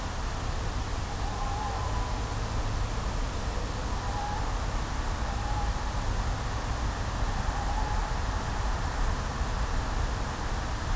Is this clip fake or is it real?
real